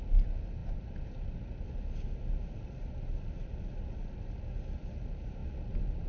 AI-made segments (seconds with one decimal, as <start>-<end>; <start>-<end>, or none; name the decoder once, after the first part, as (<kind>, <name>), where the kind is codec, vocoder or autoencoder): none